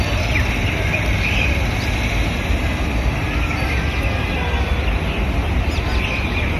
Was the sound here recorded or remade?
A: recorded